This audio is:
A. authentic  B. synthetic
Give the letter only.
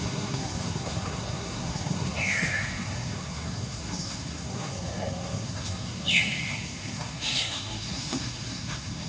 B